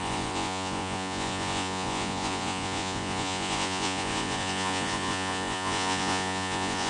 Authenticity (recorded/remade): remade